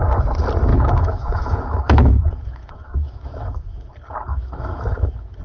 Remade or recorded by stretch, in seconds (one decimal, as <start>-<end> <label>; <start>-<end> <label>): 0.0-0.7 recorded; 0.7-3.9 remade; 3.9-4.3 recorded; 4.3-5.4 remade